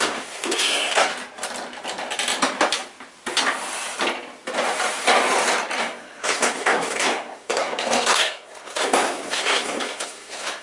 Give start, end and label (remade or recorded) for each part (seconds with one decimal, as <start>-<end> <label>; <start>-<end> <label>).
0.0-1.1 remade; 1.1-5.8 recorded; 5.8-10.6 remade